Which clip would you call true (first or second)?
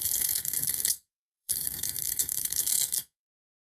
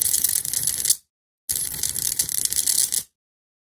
second